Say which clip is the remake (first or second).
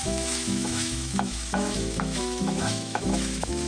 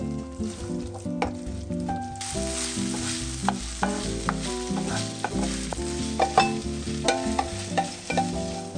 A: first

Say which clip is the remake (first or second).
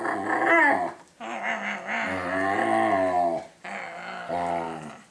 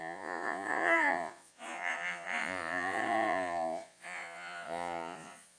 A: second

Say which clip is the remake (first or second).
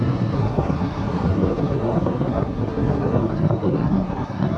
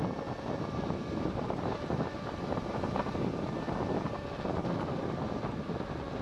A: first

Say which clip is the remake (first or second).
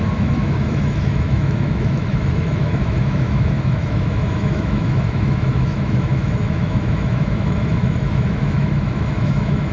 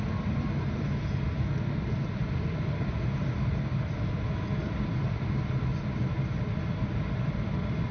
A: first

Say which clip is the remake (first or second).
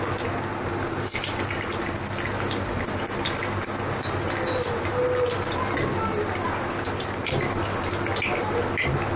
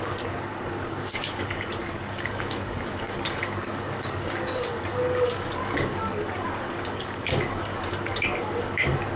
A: second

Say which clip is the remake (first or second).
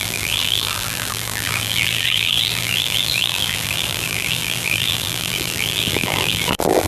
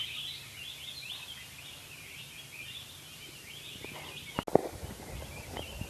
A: first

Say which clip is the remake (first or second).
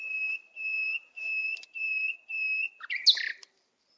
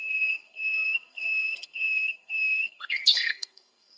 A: second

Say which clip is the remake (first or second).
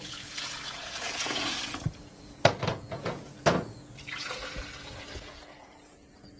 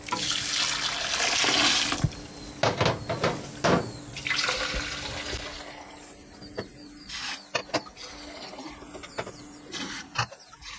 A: first